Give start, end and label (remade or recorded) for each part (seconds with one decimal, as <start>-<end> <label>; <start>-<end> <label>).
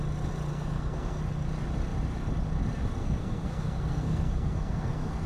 0.0-0.5 recorded; 0.5-1.2 remade; 1.2-3.0 recorded; 3.0-5.3 remade